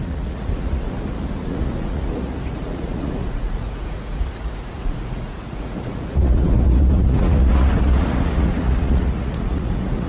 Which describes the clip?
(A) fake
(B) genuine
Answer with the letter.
A